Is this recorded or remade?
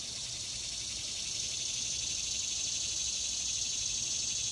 recorded